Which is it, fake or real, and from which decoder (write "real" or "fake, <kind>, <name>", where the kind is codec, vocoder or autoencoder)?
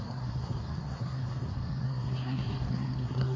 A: fake, codec, SNAC